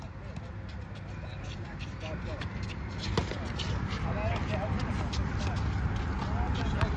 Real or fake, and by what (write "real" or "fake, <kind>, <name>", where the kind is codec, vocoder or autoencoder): real